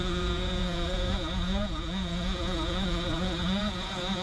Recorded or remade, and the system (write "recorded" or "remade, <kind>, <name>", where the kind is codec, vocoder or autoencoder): remade, vocoder, Vocos